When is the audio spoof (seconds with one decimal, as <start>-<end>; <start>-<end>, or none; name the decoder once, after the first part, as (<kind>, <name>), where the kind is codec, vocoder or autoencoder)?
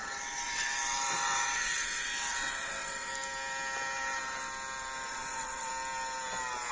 0.0-3.1 (vocoder, WaveNeXt); 5.1-5.7